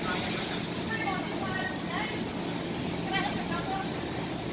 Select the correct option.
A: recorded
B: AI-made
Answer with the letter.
A